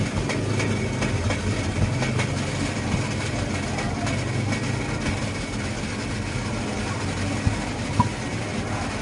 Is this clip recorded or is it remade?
recorded